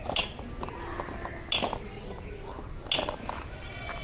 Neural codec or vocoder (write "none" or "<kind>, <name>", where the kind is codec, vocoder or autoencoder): none